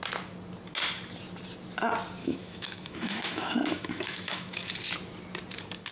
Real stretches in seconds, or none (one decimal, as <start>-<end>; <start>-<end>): 0.0-2.2; 4.7-5.9